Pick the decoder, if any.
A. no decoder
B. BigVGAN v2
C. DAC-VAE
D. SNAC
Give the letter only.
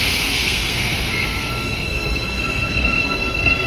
D